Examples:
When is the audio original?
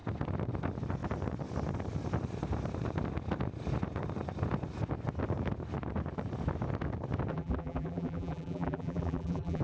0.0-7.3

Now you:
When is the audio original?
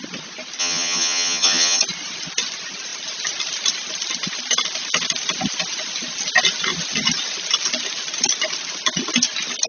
0.0-0.6; 1.8-9.7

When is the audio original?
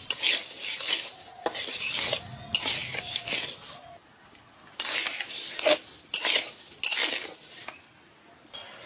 0.0-8.9